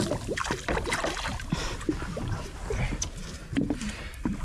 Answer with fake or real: real